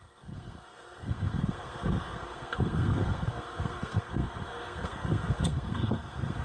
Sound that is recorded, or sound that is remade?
remade